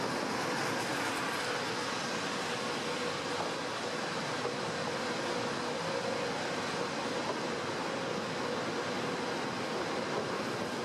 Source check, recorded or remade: recorded